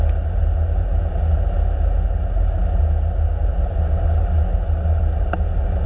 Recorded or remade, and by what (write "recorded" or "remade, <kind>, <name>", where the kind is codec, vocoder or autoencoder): recorded